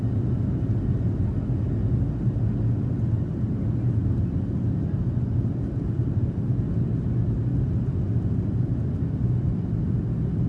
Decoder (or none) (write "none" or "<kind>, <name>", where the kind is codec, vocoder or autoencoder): none